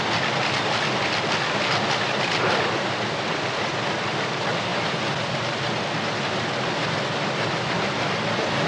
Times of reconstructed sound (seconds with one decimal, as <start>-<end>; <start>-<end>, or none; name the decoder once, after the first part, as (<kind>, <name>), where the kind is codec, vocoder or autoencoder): none